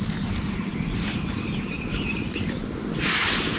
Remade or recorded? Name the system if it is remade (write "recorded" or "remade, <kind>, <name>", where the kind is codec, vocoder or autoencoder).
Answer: recorded